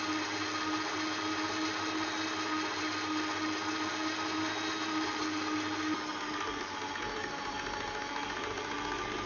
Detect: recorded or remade recorded